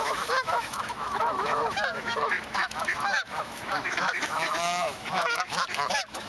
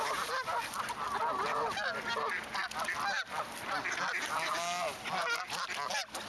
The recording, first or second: second